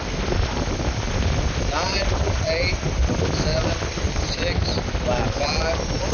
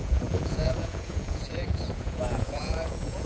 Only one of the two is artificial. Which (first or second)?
second